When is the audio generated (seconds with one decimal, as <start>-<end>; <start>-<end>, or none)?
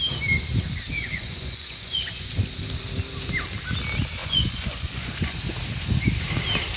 1.0-2.3; 4.2-5.4